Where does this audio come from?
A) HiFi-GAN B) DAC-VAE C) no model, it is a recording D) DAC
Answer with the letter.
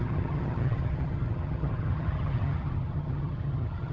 A